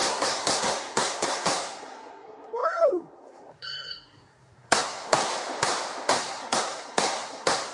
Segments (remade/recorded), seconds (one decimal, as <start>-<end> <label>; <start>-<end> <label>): 0.0-5.3 remade; 5.3-6.1 recorded; 6.1-7.7 remade